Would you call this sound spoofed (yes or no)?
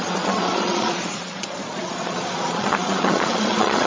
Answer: yes